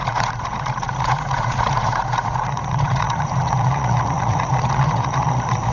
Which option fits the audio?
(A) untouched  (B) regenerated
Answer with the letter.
B